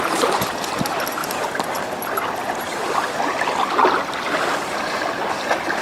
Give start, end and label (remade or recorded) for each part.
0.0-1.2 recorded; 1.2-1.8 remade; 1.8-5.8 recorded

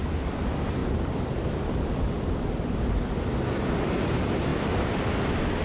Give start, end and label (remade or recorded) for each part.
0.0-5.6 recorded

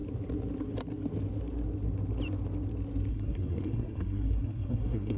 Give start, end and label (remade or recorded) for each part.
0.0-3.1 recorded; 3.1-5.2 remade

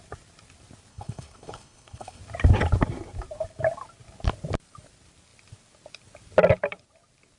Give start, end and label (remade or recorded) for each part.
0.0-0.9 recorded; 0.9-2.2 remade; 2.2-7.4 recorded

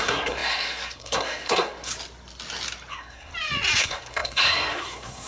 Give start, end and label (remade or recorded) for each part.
0.0-1.9 remade; 1.9-2.9 recorded; 2.9-3.3 remade; 3.3-3.8 recorded; 3.8-5.3 remade

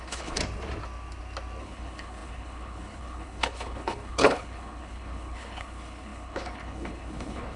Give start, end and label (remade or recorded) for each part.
0.0-0.4 remade; 0.4-1.6 recorded; 1.6-7.6 remade

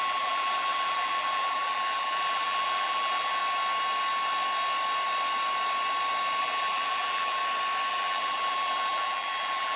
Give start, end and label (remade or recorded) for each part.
0.0-3.4 remade; 3.4-6.4 recorded; 6.4-7.4 remade; 7.4-7.9 recorded; 7.9-9.8 remade